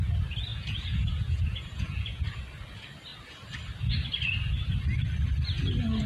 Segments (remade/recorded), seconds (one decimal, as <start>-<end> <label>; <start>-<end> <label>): 0.0-0.5 recorded; 0.5-2.2 remade; 2.2-6.1 recorded